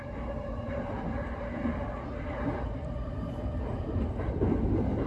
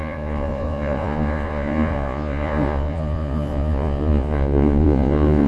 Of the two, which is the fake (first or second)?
second